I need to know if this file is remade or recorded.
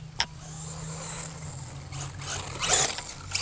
recorded